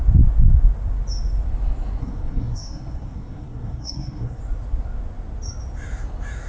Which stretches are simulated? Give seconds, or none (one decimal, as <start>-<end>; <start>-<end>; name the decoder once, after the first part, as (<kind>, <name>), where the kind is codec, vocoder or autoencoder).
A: 2.0-4.4 (codec, SNAC)